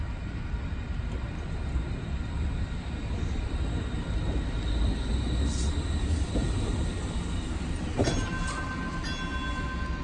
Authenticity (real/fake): real